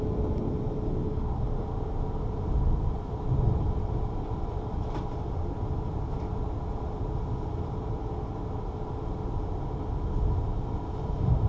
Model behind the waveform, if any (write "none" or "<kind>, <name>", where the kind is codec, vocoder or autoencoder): none